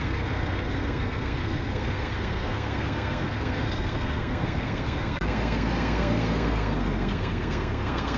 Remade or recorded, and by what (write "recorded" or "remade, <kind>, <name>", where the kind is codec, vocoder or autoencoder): remade, codec, SNAC